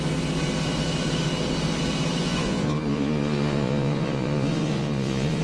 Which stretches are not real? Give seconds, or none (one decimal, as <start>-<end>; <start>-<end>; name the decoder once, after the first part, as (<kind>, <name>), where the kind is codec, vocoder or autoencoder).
2.2-5.4 (vocoder, Vocos)